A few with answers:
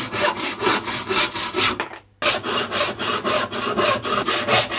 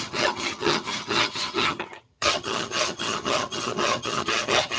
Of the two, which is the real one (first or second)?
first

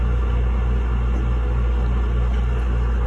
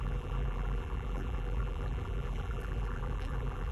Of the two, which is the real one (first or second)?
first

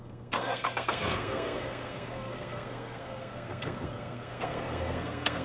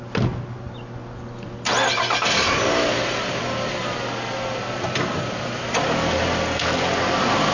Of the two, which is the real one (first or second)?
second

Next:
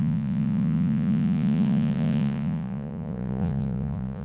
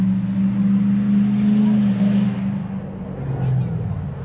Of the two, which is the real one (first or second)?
second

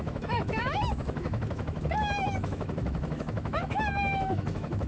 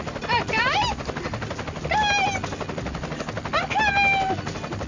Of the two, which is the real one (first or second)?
second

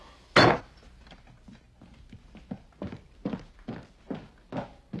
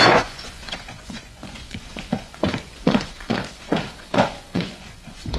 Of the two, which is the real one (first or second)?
first